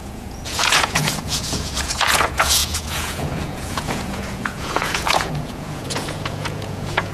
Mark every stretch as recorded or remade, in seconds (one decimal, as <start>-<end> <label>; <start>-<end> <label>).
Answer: 0.0-7.1 remade